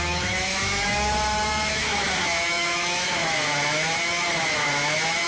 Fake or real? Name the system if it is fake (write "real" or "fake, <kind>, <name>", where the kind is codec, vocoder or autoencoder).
fake, autoencoder, DAC-VAE